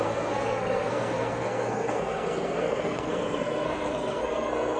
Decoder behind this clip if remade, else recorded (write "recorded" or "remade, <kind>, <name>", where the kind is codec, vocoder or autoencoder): remade, codec, SNAC